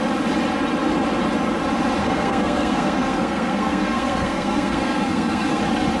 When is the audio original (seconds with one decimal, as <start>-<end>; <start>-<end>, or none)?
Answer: 0.0-2.0; 5.6-6.0